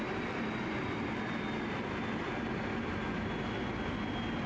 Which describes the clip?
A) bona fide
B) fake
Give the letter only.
A